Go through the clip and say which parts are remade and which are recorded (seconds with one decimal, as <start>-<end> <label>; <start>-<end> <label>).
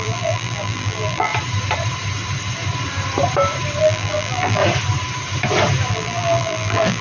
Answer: 0.0-1.3 remade; 1.3-3.8 recorded; 3.8-4.6 remade; 4.6-5.9 recorded; 5.9-7.0 remade